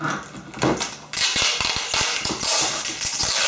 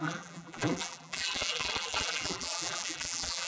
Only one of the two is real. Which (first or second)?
first